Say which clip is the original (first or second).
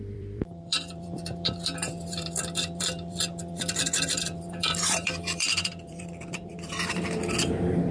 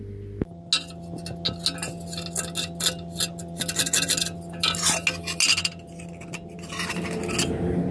second